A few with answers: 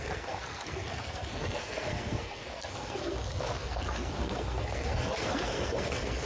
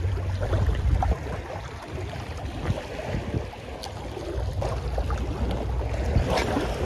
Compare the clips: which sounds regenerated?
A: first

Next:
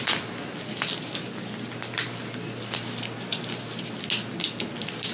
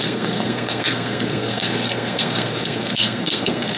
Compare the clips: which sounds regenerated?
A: second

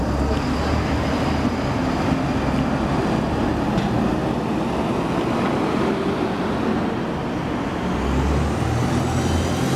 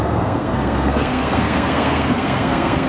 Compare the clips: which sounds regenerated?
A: second